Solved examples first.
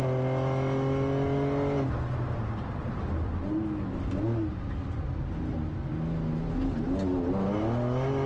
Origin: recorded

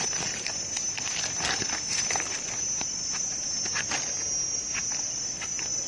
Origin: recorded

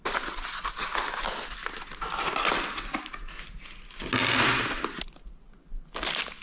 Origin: recorded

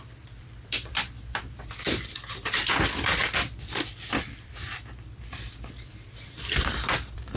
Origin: remade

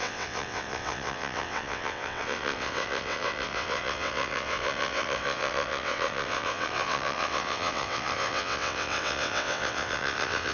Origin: remade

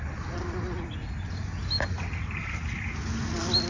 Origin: recorded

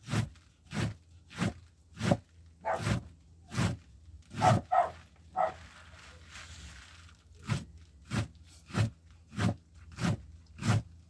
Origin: recorded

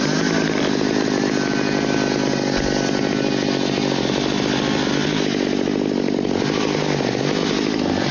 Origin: recorded